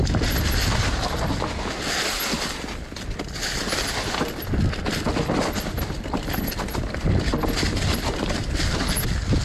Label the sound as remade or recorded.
recorded